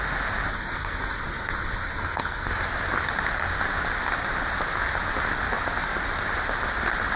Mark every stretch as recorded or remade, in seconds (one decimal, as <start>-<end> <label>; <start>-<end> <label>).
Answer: 0.0-0.5 recorded; 0.5-2.5 remade; 2.5-7.2 recorded